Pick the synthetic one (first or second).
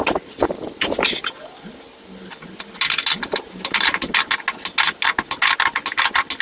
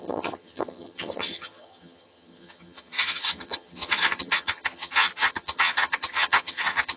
second